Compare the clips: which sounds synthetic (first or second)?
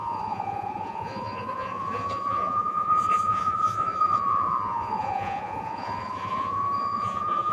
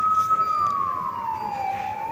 first